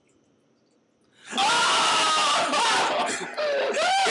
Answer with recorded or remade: recorded